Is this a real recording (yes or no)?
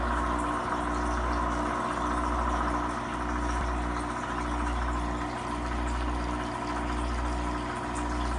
yes